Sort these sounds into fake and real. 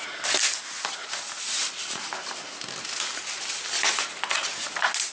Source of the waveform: real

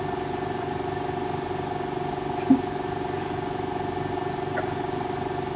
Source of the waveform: real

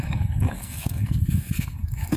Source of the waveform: fake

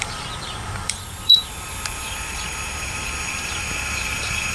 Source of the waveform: fake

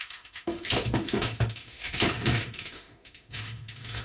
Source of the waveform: fake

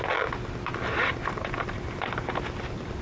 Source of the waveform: real